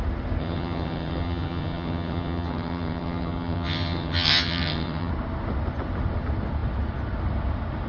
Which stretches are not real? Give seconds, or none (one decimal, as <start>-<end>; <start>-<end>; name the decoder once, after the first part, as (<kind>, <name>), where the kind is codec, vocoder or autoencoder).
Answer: 0.4-5.1 (vocoder, HiFi-GAN)